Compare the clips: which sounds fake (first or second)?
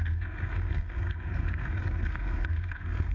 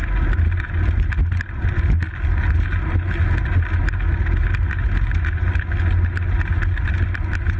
first